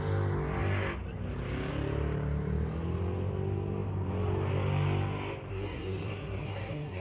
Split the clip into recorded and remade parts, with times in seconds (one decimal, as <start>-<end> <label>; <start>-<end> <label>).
0.0-5.5 recorded; 5.5-7.0 remade